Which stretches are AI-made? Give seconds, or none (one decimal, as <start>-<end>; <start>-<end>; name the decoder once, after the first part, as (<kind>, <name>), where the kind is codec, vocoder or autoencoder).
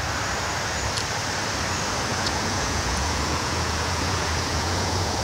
2.1-5.2 (vocoder, Vocos)